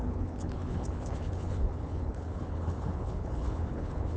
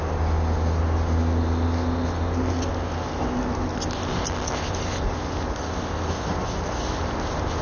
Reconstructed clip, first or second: first